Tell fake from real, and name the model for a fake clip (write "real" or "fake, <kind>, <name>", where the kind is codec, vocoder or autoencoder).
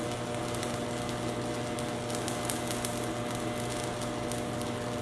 real